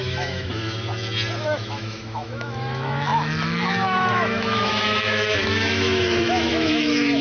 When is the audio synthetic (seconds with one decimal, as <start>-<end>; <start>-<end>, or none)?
0.0-0.7; 1.4-7.2